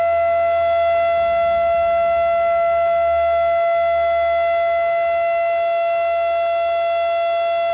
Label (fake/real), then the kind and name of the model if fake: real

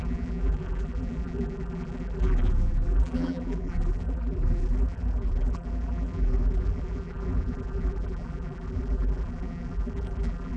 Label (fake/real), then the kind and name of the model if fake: fake, vocoder, BigVGAN v2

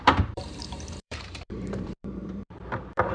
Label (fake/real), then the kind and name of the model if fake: fake, vocoder, BigVGAN v2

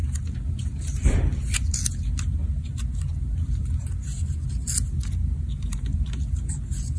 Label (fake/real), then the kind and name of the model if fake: real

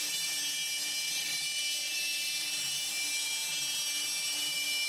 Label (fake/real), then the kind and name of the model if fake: fake, vocoder, BigVGAN v2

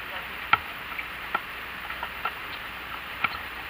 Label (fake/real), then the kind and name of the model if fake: fake, vocoder, BigVGAN v2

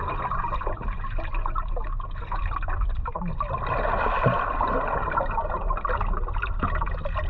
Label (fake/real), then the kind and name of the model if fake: real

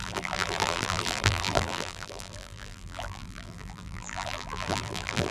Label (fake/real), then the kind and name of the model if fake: fake, vocoder, BigVGAN v2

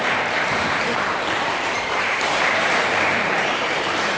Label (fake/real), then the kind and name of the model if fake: fake, vocoder, BigVGAN v2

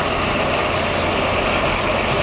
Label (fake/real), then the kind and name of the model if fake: fake, vocoder, BigVGAN v2